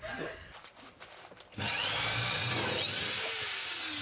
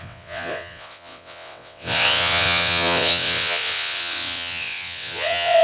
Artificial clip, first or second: second